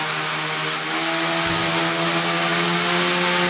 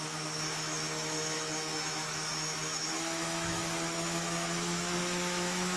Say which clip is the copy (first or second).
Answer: second